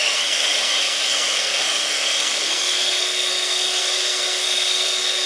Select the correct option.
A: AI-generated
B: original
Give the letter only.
A